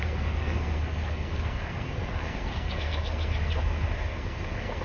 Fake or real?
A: fake